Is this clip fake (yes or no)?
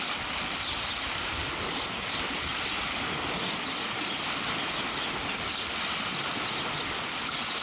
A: no